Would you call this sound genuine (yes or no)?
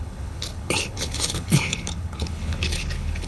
no